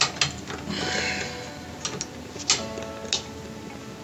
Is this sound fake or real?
real